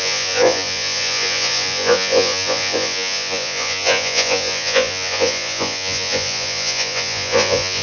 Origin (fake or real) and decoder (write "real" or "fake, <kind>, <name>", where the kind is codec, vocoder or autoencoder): fake, vocoder, Vocos